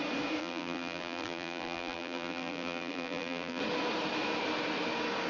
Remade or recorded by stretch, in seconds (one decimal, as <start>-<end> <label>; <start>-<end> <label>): 0.0-0.4 recorded; 0.4-3.6 remade; 3.6-5.3 recorded